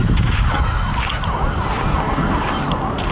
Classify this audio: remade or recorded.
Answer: recorded